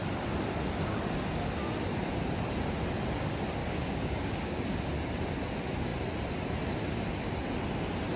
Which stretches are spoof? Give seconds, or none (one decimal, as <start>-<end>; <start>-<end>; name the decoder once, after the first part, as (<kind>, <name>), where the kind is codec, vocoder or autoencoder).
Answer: 3.6-4.6 (codec, DAC)